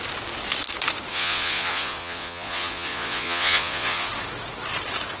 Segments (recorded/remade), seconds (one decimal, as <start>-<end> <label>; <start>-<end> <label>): 0.0-1.1 recorded; 1.1-4.1 remade; 4.1-5.2 recorded